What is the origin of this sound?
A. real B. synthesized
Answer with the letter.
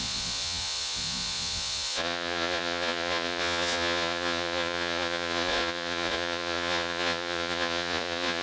B